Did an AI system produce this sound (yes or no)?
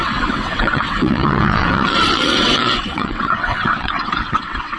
yes